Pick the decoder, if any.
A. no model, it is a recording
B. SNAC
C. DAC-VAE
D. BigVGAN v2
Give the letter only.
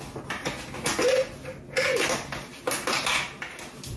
A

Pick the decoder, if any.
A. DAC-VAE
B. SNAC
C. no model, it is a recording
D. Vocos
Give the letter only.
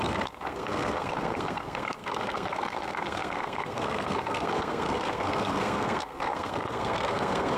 B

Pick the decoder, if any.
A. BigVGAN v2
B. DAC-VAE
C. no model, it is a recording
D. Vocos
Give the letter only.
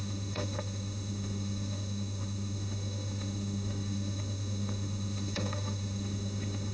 B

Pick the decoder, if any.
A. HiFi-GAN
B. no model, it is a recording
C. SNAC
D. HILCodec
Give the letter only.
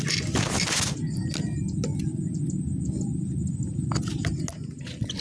B